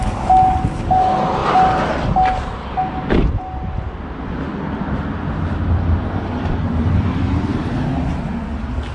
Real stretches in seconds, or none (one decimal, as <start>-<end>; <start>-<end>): 0.0-8.9